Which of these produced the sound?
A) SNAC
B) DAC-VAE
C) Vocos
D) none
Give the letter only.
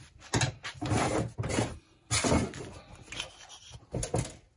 D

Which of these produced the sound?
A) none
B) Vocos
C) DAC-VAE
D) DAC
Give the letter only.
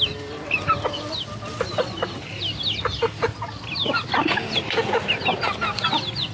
A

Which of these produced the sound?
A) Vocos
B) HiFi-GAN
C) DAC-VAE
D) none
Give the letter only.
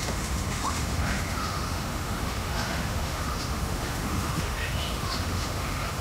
C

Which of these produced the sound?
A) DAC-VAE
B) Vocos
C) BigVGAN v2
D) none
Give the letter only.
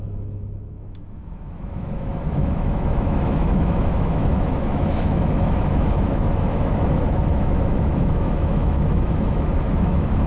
A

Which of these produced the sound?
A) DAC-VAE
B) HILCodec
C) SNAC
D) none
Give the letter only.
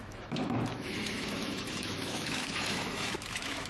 A